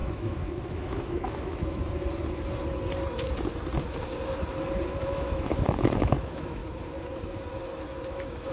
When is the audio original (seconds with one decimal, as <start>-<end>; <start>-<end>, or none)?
1.8-5.0; 6.6-8.1

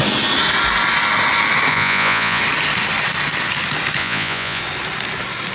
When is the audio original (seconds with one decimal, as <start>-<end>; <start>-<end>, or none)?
0.0-1.7; 2.4-4.0; 4.6-5.5

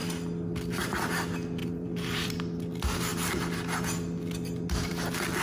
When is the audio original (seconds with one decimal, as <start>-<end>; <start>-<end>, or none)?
0.0-1.6; 2.3-5.4

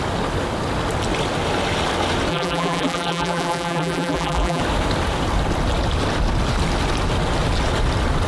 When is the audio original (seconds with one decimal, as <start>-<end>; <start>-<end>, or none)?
0.0-2.3; 4.6-8.3